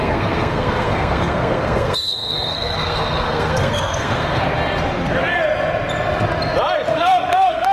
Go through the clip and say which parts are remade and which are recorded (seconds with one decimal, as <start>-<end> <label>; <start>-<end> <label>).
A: 0.0-4.4 remade; 4.4-6.9 recorded; 6.9-7.7 remade